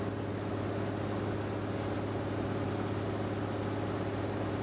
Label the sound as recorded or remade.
recorded